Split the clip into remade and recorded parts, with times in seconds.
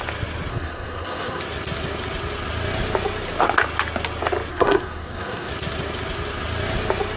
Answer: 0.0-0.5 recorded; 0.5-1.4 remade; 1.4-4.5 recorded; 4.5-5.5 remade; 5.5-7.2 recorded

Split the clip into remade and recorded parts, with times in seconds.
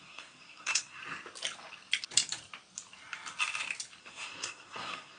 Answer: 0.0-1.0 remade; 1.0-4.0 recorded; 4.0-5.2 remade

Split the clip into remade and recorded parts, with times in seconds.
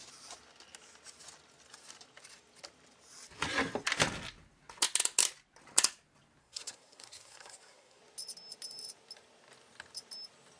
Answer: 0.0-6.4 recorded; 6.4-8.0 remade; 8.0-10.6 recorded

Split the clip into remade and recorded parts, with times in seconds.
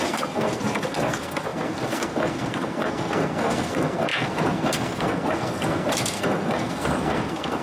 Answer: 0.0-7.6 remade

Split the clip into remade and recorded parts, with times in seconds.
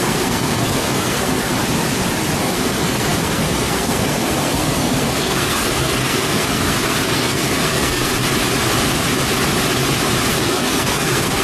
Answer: 0.0-1.6 remade; 1.6-2.4 recorded; 2.4-8.1 remade; 8.1-10.3 recorded; 10.3-11.4 remade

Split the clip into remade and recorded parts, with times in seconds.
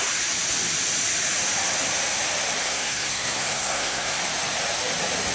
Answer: 0.0-2.6 recorded; 2.6-4.2 remade; 4.2-5.3 recorded